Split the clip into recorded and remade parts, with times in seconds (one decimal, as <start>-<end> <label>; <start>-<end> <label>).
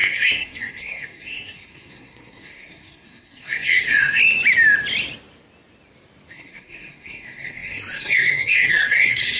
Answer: 0.0-4.2 remade; 4.2-6.3 recorded; 6.3-9.4 remade